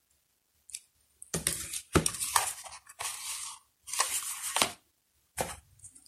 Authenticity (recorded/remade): recorded